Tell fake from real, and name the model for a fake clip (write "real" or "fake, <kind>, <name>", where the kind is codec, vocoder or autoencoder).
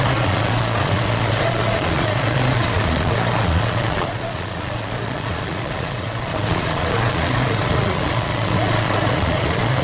fake, vocoder, Vocos